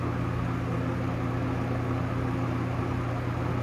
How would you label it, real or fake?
real